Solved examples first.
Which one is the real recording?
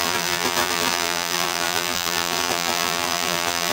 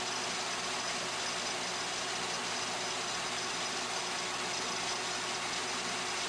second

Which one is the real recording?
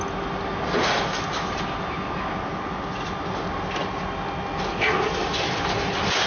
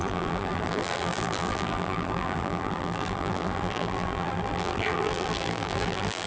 first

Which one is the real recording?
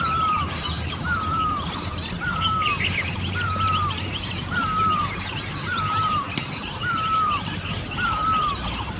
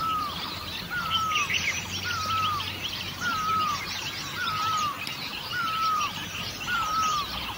second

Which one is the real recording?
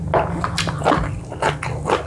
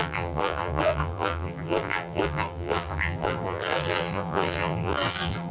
first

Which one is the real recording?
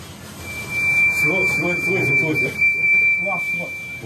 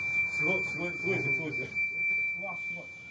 second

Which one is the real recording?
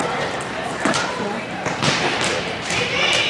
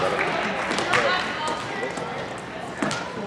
second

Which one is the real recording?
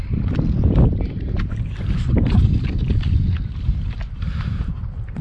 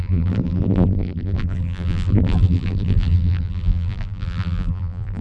first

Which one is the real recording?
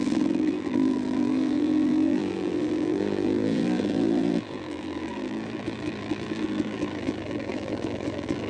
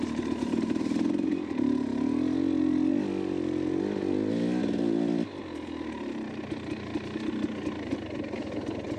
second